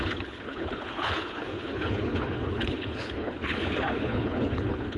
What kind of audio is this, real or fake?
fake